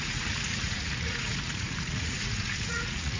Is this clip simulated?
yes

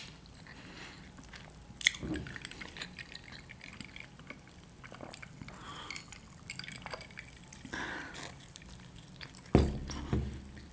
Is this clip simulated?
no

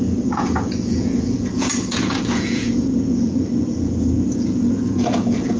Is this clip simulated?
yes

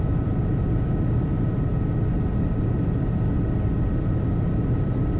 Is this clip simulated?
no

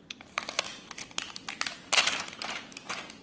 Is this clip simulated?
no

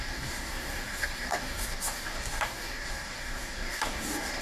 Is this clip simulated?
yes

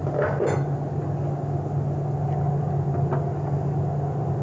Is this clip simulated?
no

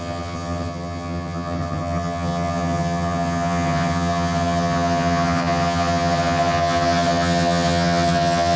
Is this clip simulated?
yes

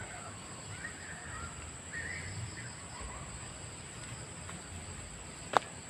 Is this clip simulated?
no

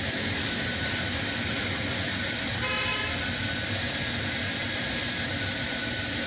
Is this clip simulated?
no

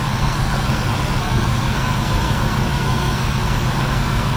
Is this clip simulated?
yes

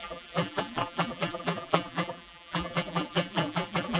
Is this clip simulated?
yes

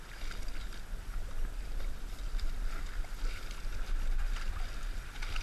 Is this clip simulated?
no